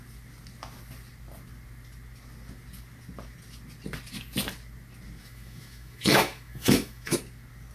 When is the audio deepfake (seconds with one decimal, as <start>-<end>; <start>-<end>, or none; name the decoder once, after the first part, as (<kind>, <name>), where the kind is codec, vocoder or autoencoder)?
5.2-7.2 (autoencoder, DAC-VAE)